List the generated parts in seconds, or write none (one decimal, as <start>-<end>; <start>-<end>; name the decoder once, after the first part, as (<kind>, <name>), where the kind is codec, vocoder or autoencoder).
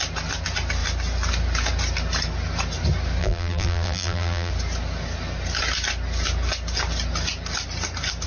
3.2-4.5 (vocoder, BigVGAN v2)